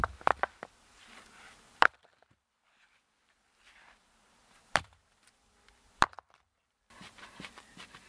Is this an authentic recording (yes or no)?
no